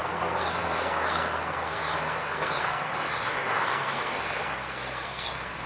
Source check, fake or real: fake